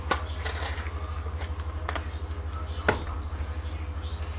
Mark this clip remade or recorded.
recorded